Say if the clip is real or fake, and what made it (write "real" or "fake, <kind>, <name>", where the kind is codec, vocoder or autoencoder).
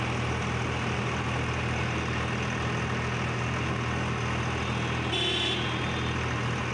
real